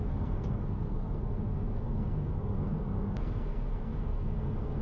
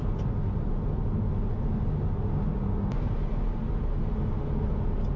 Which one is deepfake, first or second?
first